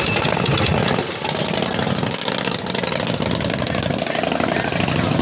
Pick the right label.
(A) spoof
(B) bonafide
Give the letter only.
B